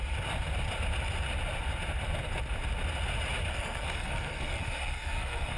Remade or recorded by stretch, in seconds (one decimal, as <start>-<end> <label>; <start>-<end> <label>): 0.0-3.5 recorded; 3.5-5.6 remade